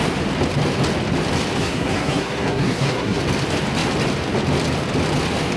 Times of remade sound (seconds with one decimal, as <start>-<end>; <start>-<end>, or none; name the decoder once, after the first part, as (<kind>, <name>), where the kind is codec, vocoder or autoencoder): 1.6-3.2 (codec, SNAC)